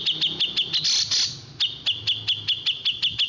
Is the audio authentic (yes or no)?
yes